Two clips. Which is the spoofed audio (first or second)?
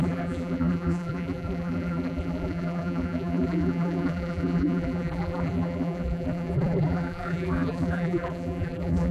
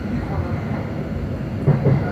first